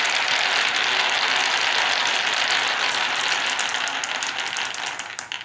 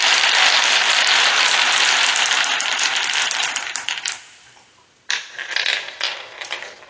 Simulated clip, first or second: second